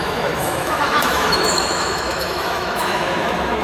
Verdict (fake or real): fake